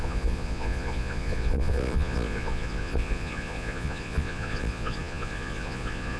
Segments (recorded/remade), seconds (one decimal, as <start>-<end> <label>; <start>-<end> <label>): 0.0-6.2 remade